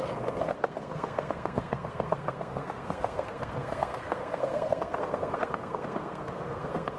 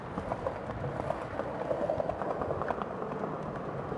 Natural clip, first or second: second